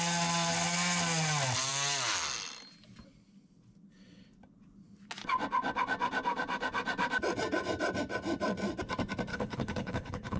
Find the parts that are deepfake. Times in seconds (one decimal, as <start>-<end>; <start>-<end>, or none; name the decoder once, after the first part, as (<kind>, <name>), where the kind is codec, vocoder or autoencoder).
9.3-10.4 (codec, HILCodec)